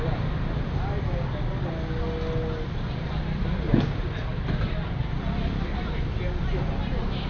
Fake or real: real